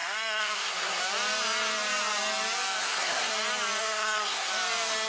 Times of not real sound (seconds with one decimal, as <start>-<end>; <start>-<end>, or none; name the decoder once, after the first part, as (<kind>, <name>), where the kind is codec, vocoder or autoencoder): 0.0-1.0 (codec, SNAC); 2.8-3.3; 3.8-4.5